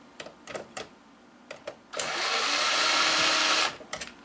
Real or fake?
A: fake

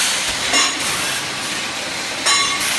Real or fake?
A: real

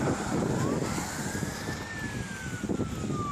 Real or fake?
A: real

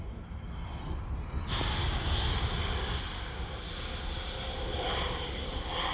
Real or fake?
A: real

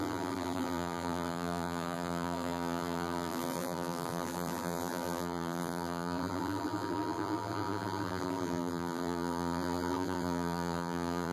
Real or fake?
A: fake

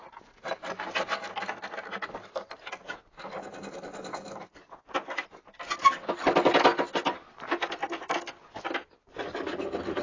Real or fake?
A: real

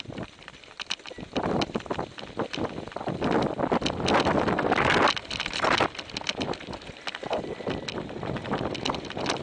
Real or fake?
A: real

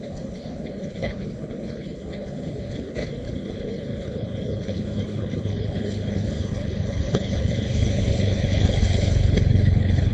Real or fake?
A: fake